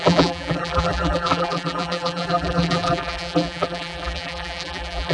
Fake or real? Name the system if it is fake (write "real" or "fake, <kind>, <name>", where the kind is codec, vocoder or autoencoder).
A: fake, vocoder, BigVGAN v2